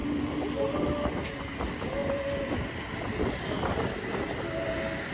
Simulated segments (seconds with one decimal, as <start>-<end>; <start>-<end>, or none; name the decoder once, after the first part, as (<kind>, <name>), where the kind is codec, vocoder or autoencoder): none